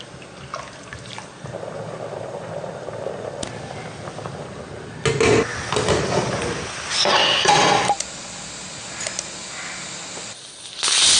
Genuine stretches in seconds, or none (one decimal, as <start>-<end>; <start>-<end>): 0.0-11.2